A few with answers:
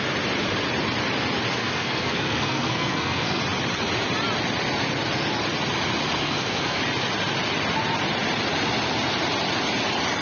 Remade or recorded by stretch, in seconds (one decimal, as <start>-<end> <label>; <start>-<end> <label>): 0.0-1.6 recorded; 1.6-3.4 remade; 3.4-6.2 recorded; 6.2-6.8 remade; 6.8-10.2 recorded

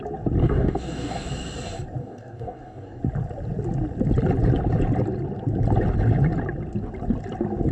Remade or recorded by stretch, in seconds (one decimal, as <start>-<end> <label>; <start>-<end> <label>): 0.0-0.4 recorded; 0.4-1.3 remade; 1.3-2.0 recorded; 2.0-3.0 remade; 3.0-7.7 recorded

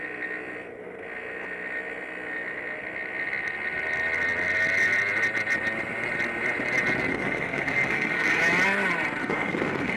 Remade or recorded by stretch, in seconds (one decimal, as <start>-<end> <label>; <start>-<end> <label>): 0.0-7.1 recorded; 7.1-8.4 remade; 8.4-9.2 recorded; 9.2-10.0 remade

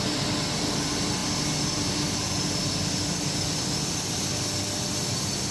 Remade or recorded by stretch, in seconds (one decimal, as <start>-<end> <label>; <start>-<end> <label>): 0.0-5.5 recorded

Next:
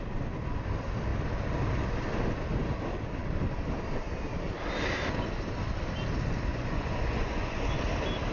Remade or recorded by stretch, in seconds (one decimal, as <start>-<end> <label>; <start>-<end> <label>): 0.0-6.5 recorded; 6.5-7.7 remade; 7.7-8.3 recorded